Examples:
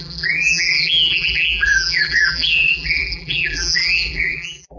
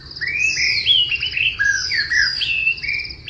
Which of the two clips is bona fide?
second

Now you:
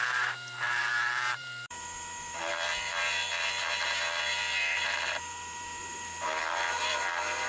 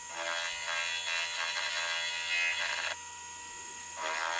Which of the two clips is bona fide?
second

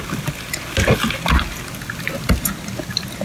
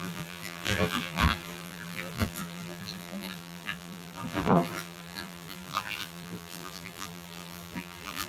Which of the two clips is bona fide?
first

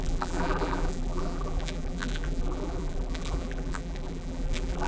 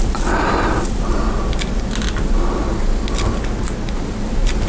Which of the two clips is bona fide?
second